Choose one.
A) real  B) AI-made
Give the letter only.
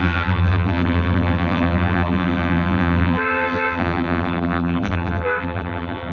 B